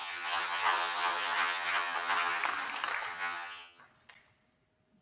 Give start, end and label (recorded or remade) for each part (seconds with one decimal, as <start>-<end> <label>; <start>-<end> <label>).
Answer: 0.0-2.4 remade; 2.4-3.1 recorded; 3.1-3.8 remade; 3.8-5.0 recorded